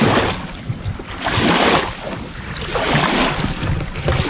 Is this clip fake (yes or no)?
no